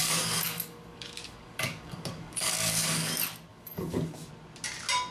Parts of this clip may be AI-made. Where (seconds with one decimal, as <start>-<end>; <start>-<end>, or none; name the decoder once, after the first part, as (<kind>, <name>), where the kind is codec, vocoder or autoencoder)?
0.0-3.1 (codec, DAC); 3.5-4.3